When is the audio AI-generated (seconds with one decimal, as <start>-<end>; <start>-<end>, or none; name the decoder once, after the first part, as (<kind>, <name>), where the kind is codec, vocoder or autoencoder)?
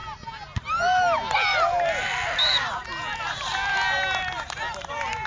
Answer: none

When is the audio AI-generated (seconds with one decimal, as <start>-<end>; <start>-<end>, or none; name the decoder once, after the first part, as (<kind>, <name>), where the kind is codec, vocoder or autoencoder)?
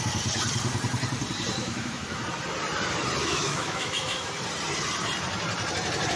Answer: 1.6-2.2 (autoencoder, DAC-VAE); 3.2-4.3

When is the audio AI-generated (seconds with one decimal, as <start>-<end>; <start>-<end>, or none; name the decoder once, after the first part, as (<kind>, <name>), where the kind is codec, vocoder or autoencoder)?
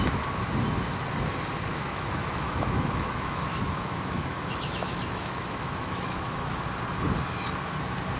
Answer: 1.7-6.6 (autoencoder, DAC-VAE)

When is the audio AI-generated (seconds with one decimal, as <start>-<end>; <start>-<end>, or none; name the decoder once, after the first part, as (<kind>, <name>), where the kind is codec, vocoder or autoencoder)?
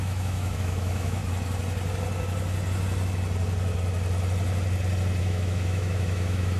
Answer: 0.0-1.2 (autoencoder, DAC-VAE); 5.2-6.6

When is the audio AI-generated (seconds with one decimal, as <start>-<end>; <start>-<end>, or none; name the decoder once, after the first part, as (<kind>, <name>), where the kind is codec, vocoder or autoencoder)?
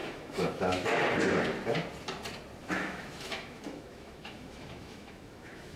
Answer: 0.0-1.0 (autoencoder, DAC-VAE); 2.6-5.8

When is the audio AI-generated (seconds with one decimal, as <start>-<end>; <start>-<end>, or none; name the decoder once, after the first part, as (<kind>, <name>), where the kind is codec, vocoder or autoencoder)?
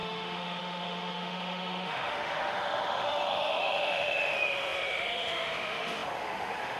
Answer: 0.0-6.8 (autoencoder, DAC-VAE)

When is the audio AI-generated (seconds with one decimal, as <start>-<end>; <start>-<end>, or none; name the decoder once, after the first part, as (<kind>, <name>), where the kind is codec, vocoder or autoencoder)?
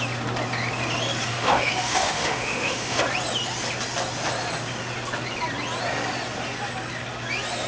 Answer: 1.3-3.0 (autoencoder, DAC-VAE)